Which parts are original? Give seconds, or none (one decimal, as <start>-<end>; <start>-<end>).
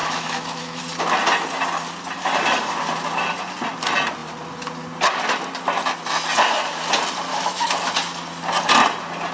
0.8-7.3; 7.9-9.3